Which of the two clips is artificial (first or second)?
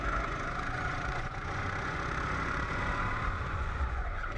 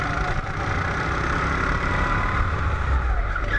first